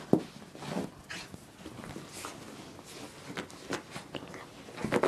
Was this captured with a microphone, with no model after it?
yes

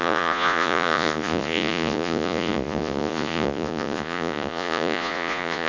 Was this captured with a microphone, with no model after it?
no